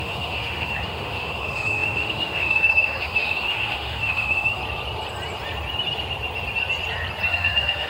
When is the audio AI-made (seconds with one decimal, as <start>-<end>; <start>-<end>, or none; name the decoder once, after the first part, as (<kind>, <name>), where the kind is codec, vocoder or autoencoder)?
0.0-4.6 (autoencoder, DAC-VAE); 7.3-7.9